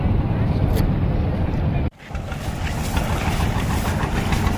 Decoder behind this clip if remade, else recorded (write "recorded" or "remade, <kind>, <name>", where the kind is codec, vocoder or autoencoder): recorded